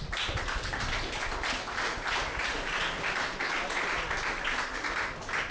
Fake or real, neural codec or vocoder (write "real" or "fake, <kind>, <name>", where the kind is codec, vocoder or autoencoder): real